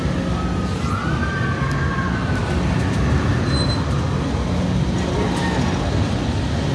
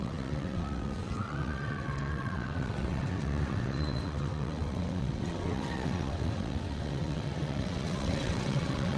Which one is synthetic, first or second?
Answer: second